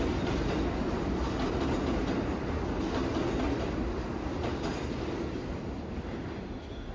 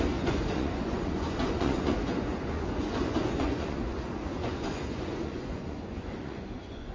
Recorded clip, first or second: first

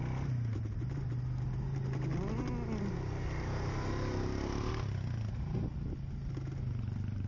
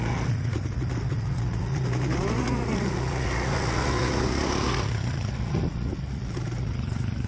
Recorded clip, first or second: first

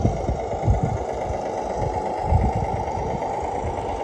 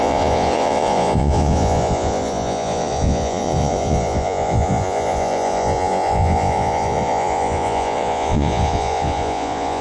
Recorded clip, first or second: first